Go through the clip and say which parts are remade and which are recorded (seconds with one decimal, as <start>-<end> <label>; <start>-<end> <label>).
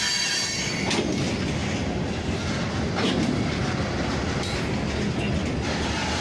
0.0-6.2 recorded